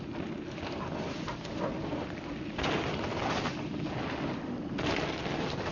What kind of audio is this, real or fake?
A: real